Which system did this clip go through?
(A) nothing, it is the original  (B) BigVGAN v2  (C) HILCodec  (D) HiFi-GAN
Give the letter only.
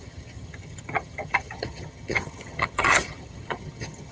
D